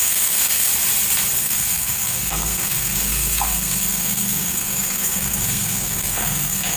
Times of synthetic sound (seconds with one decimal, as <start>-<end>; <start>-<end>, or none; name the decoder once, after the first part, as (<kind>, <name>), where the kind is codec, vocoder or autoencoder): 0.0-0.7 (codec, SNAC); 1.4-6.8